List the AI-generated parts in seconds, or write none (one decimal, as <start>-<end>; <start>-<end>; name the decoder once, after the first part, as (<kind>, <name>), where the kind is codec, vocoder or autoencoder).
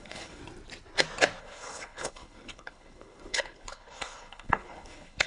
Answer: 0.0-0.4 (codec, HILCodec); 1.4-5.3